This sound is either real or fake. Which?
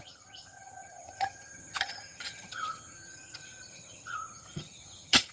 fake